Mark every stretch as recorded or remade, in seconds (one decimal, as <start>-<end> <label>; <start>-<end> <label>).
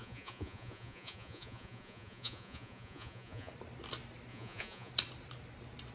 0.0-3.5 remade; 3.5-4.3 recorded; 4.3-4.9 remade; 4.9-5.9 recorded